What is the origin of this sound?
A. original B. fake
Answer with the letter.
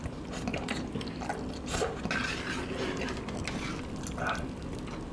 A